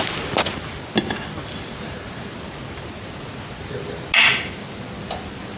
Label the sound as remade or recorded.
recorded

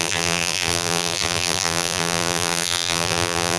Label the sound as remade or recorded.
remade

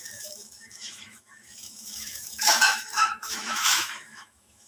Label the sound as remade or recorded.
remade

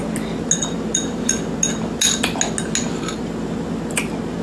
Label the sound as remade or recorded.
recorded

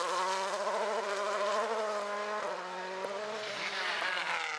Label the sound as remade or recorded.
recorded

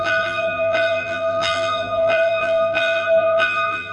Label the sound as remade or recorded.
remade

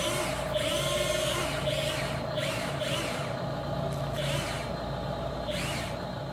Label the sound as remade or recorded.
recorded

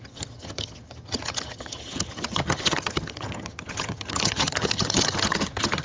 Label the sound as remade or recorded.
remade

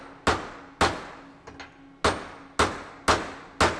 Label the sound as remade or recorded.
recorded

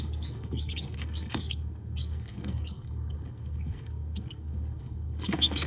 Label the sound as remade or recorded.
remade